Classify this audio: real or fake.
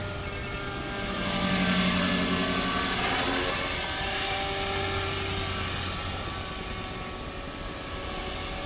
real